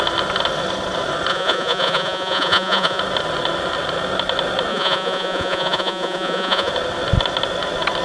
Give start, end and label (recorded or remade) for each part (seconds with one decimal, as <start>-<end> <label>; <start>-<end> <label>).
0.0-1.3 recorded; 1.3-3.0 remade; 3.0-4.7 recorded; 4.7-6.7 remade; 6.7-8.0 recorded